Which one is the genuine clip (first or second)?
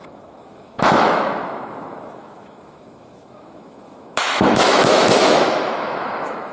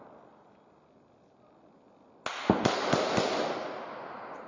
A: second